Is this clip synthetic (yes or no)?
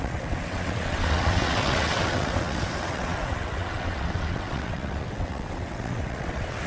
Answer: yes